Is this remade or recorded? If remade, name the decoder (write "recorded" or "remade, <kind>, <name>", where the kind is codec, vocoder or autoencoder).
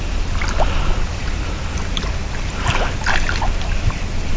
recorded